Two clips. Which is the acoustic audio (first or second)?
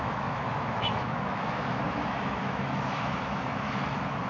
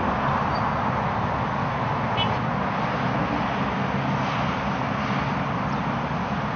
second